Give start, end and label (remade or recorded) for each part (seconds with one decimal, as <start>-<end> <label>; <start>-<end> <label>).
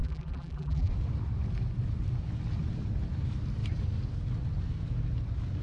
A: 0.0-0.9 remade; 0.9-5.6 recorded